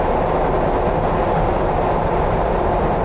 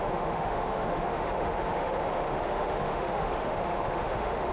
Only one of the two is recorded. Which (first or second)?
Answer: first